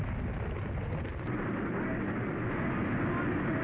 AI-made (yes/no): no